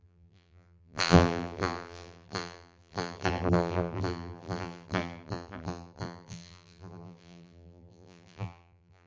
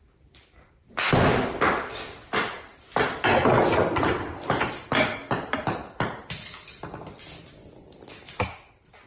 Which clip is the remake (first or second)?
first